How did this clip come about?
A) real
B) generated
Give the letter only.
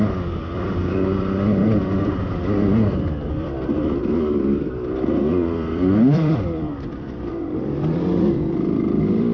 B